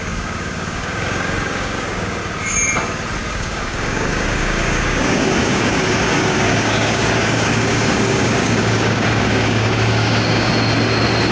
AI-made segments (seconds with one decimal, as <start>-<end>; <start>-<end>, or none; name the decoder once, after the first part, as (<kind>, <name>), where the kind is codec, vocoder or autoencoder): 0.0-2.2 (codec, DAC); 3.3-10.5